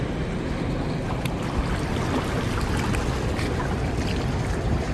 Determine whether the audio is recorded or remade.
recorded